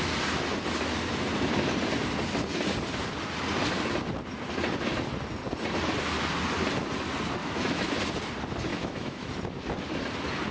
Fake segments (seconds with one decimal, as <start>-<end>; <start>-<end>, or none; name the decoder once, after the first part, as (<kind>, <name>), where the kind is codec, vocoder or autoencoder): 7.4-7.9 (autoencoder, DAC-VAE); 8.7-9.3